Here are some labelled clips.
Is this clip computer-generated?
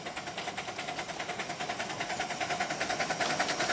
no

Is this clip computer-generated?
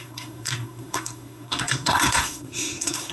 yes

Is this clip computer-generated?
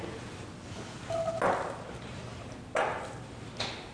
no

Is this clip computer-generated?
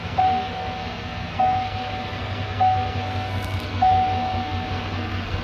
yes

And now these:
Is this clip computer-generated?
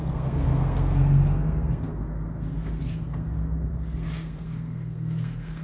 yes